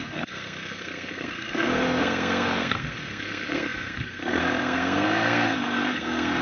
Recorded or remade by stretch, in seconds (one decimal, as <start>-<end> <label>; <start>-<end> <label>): 0.0-6.4 remade